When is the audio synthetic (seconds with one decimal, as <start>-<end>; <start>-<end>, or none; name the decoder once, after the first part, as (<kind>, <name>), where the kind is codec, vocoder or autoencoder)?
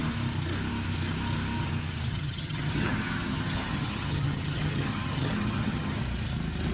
2.1-6.0 (vocoder, HiFi-GAN)